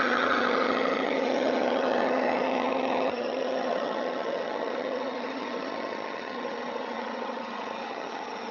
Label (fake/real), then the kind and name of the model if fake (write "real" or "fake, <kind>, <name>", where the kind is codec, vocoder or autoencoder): fake, vocoder, HiFi-GAN